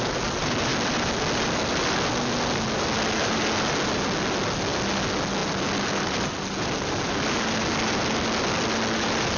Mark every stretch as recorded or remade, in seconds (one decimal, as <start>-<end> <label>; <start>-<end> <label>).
0.0-9.4 recorded